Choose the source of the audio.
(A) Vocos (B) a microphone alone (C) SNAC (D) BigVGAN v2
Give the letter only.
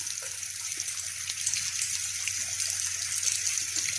B